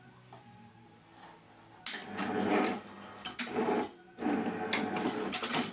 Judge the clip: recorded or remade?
recorded